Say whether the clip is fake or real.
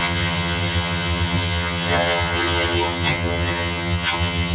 fake